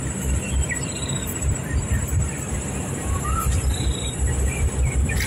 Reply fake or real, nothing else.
fake